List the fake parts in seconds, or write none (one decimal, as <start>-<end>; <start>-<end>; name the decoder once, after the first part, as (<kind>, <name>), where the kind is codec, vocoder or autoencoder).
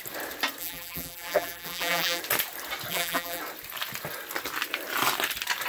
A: 0.6-2.2 (vocoder, BigVGAN v2); 2.9-3.4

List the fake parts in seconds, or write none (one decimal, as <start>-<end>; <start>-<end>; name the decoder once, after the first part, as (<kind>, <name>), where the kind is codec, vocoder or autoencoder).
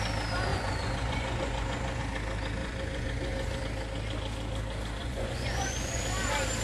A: 0.5-2.0 (vocoder, Vocos); 2.6-3.6; 5.0-6.0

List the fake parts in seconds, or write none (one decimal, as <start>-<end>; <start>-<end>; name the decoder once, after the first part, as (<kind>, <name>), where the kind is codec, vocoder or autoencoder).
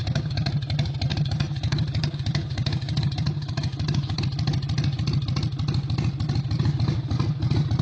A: 0.0-0.5 (codec, DAC); 1.1-4.2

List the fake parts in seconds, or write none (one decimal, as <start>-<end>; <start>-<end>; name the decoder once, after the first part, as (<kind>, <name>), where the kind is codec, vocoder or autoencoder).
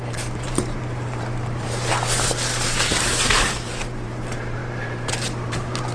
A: 0.0-1.9 (vocoder, BigVGAN v2); 3.4-5.9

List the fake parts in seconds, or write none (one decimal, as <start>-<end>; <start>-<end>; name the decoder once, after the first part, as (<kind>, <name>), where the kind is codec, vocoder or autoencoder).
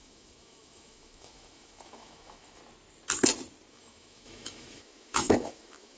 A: 0.0-2.6 (autoencoder, DAC-VAE); 3.7-6.0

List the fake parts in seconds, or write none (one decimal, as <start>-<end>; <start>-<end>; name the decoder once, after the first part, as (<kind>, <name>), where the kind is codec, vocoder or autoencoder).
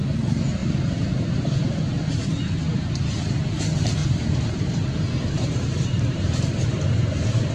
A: 0.6-1.1 (vocoder, BigVGAN v2); 4.0-7.5